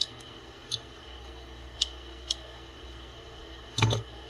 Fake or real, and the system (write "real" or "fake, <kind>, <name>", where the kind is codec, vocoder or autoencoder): fake, codec, SNAC